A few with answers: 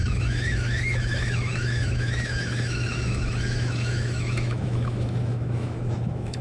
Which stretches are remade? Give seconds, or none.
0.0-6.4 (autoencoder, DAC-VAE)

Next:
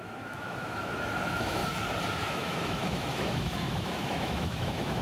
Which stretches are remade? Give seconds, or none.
0.0-1.6 (autoencoder, DAC-VAE); 2.3-5.0

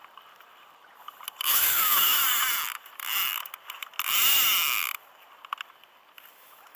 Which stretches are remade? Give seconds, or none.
1.5-2.2 (autoencoder, DAC-VAE); 6.3-6.8

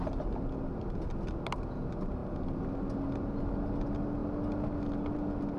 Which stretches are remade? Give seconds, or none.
none

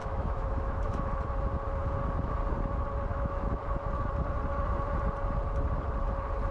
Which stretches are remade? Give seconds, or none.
0.0-1.1 (autoencoder, DAC-VAE); 3.1-3.6